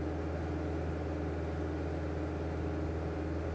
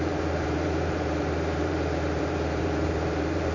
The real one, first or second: first